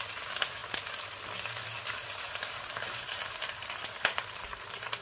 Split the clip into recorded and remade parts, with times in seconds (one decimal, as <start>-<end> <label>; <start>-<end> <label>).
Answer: 0.0-0.6 recorded; 0.6-1.2 remade; 1.2-2.0 recorded; 2.0-5.0 remade